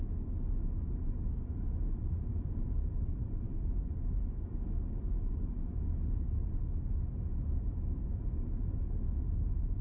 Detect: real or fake real